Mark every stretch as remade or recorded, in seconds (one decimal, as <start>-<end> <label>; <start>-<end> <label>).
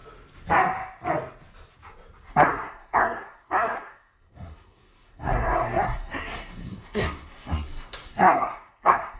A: 0.0-2.3 recorded; 2.3-9.2 remade